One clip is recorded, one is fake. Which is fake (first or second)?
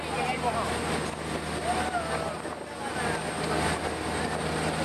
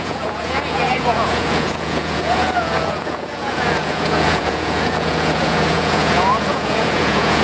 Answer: second